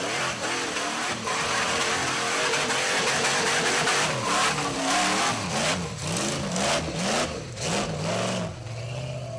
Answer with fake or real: real